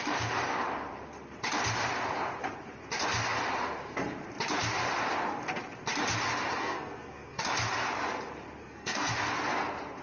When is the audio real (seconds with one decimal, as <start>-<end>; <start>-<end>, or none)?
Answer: 0.0-6.6; 7.4-8.6; 9.1-10.0